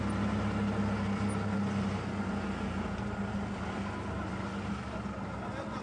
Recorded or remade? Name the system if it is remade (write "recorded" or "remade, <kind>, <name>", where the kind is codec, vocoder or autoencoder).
recorded